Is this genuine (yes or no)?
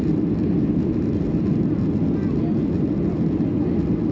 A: yes